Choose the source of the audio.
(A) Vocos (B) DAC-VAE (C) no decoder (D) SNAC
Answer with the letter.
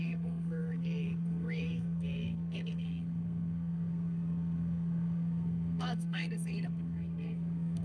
D